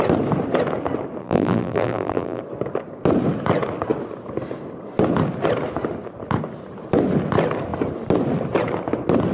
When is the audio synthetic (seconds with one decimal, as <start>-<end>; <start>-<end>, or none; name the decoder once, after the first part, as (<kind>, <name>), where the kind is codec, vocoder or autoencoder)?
1.2-2.4 (vocoder, BigVGAN v2)